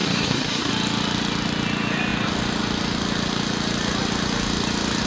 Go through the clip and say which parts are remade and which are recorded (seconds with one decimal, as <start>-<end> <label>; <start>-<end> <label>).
0.0-0.7 remade; 0.7-5.1 recorded

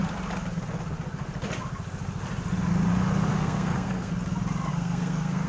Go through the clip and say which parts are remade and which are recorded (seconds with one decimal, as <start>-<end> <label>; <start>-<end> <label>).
0.0-3.3 recorded; 3.3-4.1 remade; 4.1-4.7 recorded; 4.7-5.5 remade

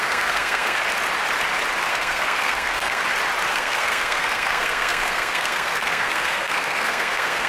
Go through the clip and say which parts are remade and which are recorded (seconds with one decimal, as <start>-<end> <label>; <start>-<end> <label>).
0.0-0.8 remade; 0.8-1.9 recorded; 1.9-3.0 remade; 3.0-3.5 recorded; 3.5-7.5 remade

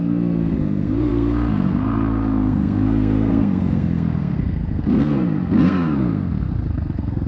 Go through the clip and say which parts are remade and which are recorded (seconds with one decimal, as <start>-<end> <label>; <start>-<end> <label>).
0.0-7.3 remade

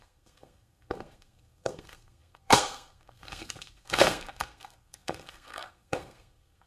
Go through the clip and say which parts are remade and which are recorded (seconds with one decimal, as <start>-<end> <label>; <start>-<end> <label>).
0.0-6.7 remade